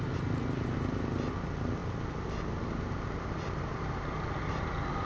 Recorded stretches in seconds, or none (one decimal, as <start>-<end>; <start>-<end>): 0.0-5.1